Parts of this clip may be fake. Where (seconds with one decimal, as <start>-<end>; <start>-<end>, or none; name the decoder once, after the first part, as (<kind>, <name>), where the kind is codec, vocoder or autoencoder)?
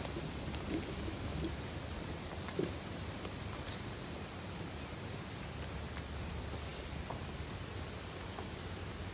none